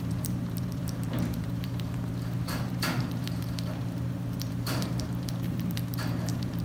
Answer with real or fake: fake